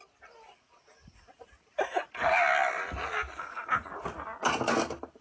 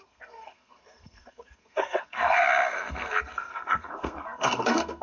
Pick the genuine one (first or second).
first